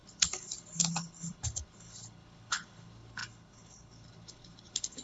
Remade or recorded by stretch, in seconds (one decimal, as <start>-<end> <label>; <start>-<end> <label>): 0.0-5.0 remade